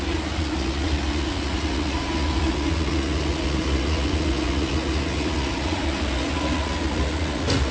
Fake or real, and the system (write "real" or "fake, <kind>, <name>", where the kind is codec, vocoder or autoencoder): fake, vocoder, Vocos